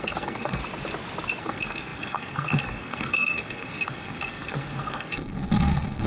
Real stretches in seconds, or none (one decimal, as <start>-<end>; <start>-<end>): 0.6-1.4